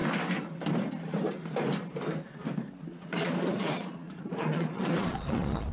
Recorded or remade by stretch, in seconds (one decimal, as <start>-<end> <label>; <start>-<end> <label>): 0.0-2.9 recorded; 2.9-5.7 remade

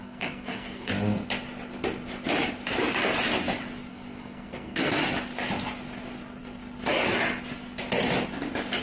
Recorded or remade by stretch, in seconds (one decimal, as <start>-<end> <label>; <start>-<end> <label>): 0.0-0.9 remade; 0.9-3.9 recorded; 3.9-4.9 remade; 4.9-8.8 recorded

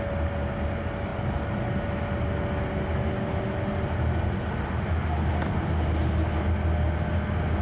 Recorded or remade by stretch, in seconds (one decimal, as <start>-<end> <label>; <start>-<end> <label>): 0.0-7.6 recorded

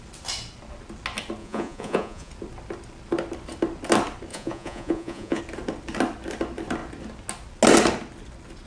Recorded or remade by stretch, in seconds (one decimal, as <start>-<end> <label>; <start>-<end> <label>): 0.0-1.4 recorded; 1.4-2.3 remade; 2.3-4.3 recorded; 4.3-5.4 remade; 5.4-8.7 recorded